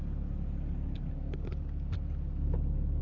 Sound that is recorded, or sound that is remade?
recorded